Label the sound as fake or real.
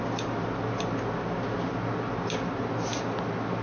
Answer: real